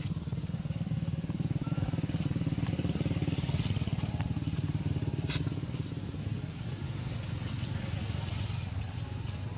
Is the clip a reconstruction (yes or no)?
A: no